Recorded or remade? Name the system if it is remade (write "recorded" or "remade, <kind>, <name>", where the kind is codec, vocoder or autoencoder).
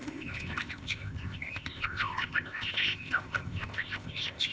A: remade, codec, ZipCodec